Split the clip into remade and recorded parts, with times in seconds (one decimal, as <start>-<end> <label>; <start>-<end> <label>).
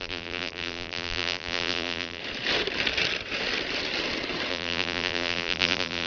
0.0-2.2 remade; 2.2-4.5 recorded; 4.5-6.1 remade